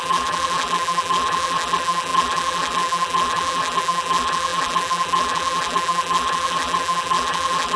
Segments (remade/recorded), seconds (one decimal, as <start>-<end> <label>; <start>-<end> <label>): 0.0-7.8 remade